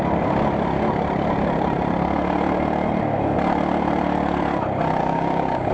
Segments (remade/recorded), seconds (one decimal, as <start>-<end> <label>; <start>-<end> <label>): 0.0-5.0 recorded; 5.0-5.7 remade